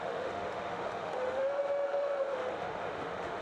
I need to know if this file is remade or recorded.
remade